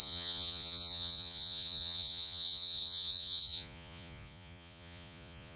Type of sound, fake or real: fake